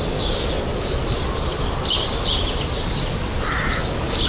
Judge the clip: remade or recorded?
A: recorded